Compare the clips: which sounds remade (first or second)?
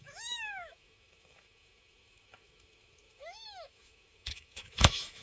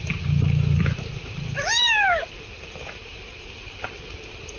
first